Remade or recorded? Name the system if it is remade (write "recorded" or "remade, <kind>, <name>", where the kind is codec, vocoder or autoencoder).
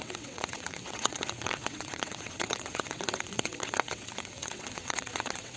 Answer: remade, vocoder, WaveNeXt